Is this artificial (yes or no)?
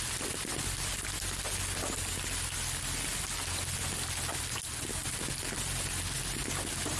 no